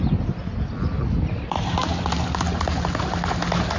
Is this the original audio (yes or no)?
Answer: yes